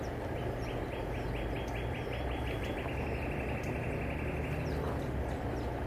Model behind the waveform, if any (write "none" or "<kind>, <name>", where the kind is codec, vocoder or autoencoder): none